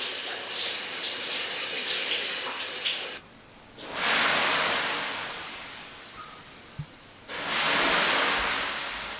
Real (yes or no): yes